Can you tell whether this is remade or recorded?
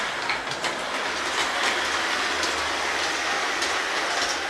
recorded